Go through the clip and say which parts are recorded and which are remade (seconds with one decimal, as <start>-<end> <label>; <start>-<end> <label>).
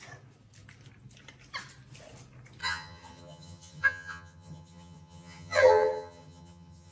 0.0-2.6 recorded; 2.6-6.9 remade